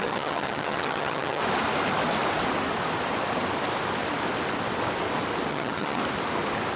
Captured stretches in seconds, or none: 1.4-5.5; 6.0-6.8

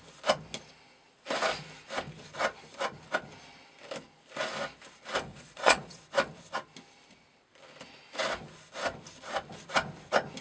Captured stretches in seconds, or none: 0.0-5.3; 6.0-10.4

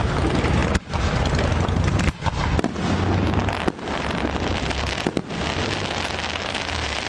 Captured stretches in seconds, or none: 0.0-3.4; 5.6-7.1

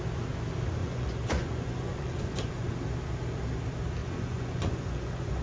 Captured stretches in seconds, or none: 0.0-0.8; 2.7-4.0

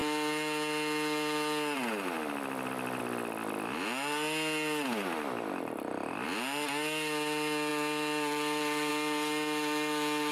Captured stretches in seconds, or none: 0.0-7.7; 8.9-10.3

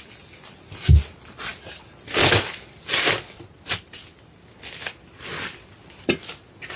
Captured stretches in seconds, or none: 0.0-6.8